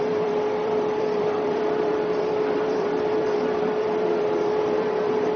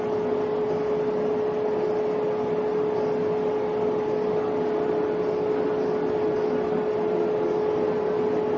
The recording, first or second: second